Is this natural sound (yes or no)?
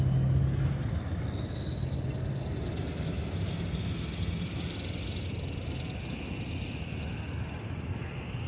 yes